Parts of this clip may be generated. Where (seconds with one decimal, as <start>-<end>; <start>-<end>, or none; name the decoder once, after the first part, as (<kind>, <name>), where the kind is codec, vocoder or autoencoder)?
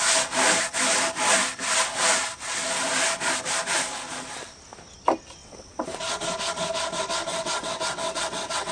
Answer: 5.4-6.0 (vocoder, WaveNeXt); 7.3-8.7